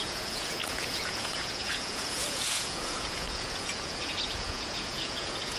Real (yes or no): no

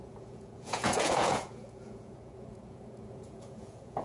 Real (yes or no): no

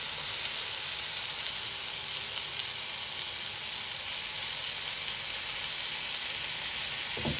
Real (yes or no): yes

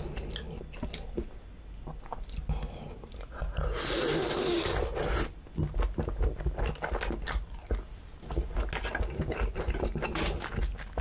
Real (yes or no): yes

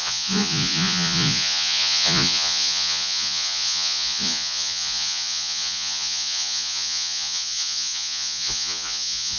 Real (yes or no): no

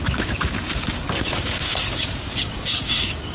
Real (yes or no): no